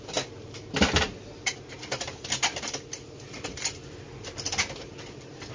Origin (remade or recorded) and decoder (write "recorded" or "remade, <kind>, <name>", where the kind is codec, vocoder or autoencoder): recorded